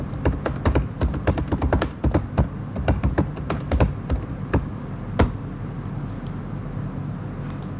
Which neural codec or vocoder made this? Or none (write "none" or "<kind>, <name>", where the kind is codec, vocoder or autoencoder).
none